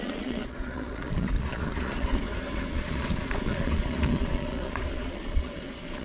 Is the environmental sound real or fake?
fake